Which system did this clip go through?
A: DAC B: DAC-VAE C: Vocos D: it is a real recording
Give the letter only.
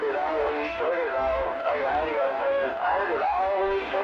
A